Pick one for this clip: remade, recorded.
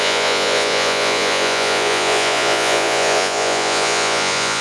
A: remade